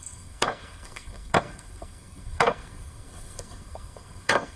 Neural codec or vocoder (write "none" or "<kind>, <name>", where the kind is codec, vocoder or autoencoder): codec, SNAC